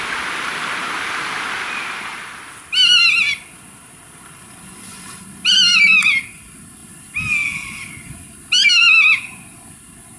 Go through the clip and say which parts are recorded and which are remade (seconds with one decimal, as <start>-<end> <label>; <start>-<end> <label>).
0.0-10.2 recorded